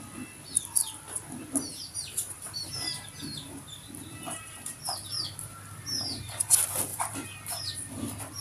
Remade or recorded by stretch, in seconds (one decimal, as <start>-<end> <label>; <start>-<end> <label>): 0.0-1.7 recorded; 1.7-6.5 remade; 6.5-6.9 recorded; 6.9-7.9 remade; 7.9-8.4 recorded